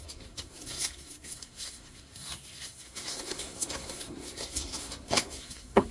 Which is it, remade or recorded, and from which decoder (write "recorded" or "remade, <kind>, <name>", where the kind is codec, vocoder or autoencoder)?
remade, codec, SNAC